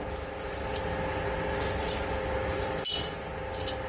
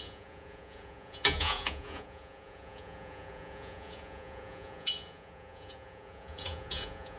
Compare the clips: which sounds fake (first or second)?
second